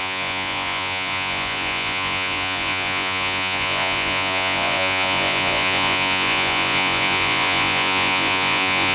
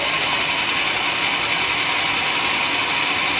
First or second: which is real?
second